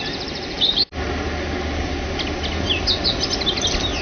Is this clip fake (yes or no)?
no